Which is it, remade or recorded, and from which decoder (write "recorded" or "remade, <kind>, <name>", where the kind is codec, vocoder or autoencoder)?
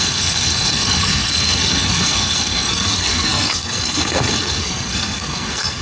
remade, codec, SNAC